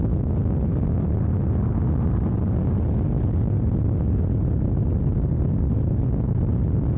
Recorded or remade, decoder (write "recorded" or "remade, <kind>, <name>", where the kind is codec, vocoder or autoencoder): recorded